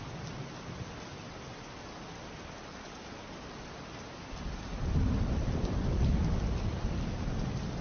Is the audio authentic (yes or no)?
yes